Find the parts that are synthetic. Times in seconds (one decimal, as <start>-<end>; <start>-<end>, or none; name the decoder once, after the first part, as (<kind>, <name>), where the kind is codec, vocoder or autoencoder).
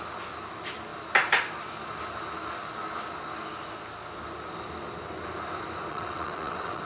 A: 5.9-6.8 (vocoder, WaveNeXt)